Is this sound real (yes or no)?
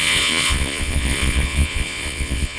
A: no